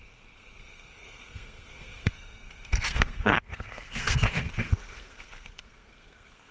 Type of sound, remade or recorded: remade